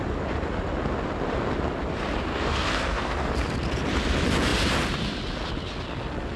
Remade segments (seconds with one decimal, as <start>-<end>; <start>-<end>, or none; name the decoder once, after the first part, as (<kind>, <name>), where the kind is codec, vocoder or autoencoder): 2.3-3.3 (codec, SNAC)